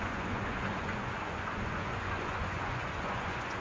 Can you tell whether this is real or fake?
fake